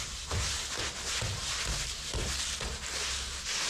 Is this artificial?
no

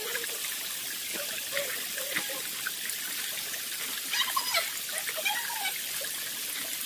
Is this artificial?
no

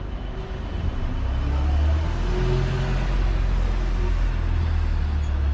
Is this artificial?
no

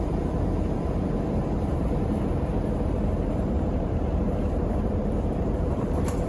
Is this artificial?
yes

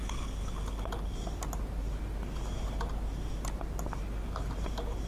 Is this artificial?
no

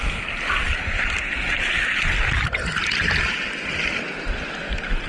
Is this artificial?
no